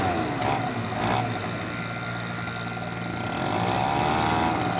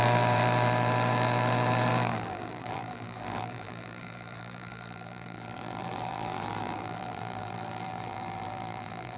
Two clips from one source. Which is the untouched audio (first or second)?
first